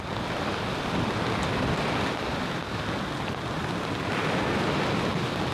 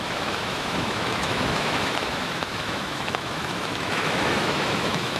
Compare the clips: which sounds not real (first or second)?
second